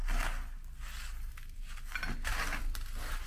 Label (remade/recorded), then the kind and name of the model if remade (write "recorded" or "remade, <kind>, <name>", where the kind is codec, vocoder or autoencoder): recorded